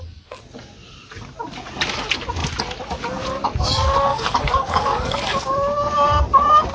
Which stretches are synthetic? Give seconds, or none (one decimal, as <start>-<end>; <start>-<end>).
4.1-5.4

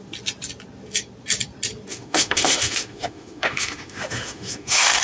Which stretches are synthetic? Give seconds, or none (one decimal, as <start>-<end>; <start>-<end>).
1.9-5.0

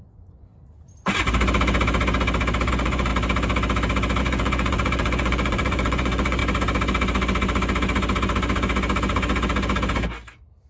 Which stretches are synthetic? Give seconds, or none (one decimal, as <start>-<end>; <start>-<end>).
0.0-0.5; 2.7-3.1; 4.2-6.4

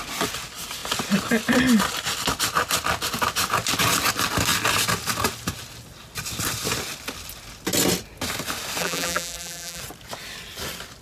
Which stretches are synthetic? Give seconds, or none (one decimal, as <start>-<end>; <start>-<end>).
8.8-9.8